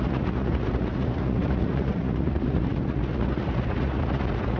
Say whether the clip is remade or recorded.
remade